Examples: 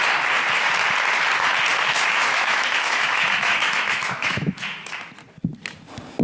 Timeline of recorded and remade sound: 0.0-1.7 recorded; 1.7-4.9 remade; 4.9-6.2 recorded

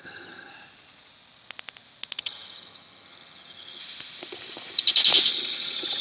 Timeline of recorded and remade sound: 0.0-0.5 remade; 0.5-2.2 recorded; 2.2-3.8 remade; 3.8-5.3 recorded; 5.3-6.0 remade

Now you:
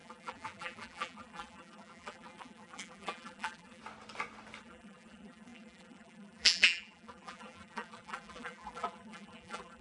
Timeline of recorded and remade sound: 0.0-3.8 remade; 3.8-4.6 recorded; 4.6-9.8 remade

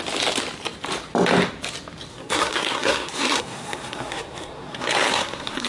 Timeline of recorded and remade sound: 0.0-2.1 recorded; 2.1-5.7 remade